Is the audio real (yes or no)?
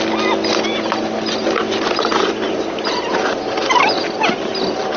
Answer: yes